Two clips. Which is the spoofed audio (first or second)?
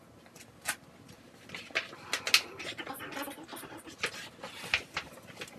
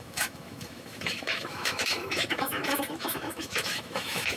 second